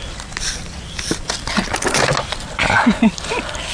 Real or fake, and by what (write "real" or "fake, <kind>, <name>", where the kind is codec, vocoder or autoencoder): real